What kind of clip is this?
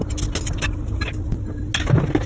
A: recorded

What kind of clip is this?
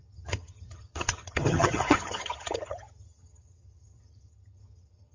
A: remade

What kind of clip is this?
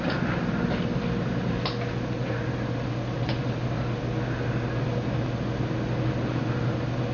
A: recorded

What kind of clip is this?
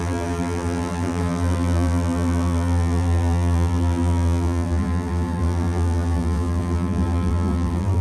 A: remade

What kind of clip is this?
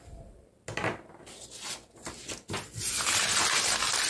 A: recorded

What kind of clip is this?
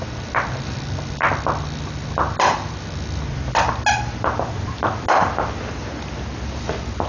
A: recorded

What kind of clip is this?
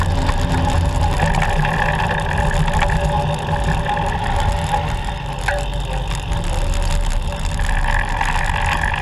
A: recorded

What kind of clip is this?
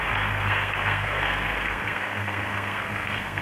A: remade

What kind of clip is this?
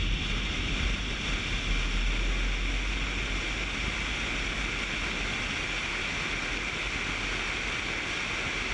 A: recorded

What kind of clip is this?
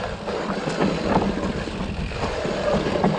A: recorded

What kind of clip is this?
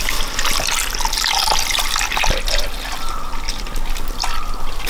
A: recorded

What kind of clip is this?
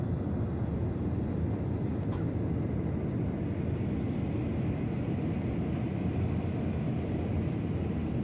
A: recorded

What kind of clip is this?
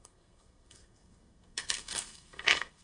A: remade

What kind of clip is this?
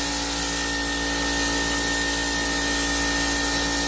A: recorded